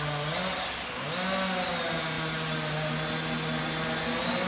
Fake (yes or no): no